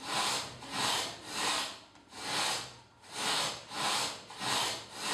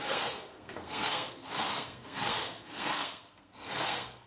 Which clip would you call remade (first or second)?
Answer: second